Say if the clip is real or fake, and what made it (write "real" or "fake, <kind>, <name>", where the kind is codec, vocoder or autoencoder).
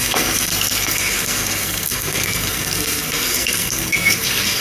fake, codec, SNAC